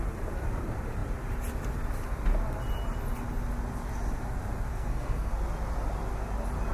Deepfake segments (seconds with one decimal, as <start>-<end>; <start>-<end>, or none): 4.7-5.3